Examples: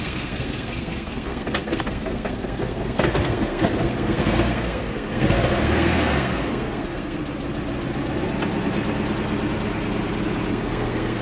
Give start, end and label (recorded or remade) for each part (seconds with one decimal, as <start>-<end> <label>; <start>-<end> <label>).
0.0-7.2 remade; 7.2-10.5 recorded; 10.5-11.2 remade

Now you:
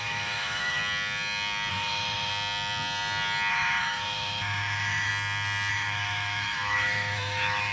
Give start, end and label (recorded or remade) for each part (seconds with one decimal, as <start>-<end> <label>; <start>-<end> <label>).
0.0-0.8 remade; 0.8-1.7 recorded; 1.7-2.3 remade; 2.3-3.5 recorded; 3.5-5.1 remade; 5.1-5.7 recorded; 5.7-7.7 remade

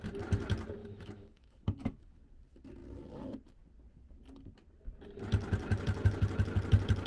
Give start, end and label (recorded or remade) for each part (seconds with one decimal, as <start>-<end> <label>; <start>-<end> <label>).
0.0-0.8 recorded; 0.8-2.2 remade; 2.2-7.1 recorded

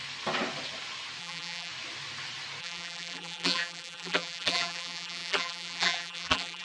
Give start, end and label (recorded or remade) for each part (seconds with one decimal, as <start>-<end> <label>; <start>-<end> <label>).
0.0-1.2 recorded; 1.2-1.7 remade; 1.7-2.6 recorded; 2.6-6.6 remade

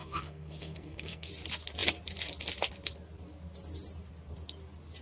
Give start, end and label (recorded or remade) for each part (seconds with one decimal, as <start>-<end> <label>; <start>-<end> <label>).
0.0-1.3 remade; 1.3-5.0 recorded